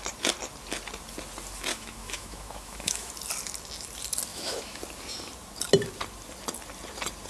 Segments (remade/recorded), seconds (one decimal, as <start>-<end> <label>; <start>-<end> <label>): 0.0-1.7 recorded; 1.7-3.1 remade; 3.1-4.3 recorded; 4.3-4.8 remade; 4.8-7.3 recorded